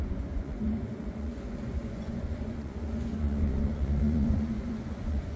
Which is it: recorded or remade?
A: remade